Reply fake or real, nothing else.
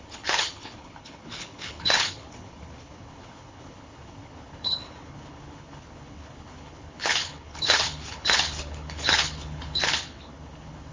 fake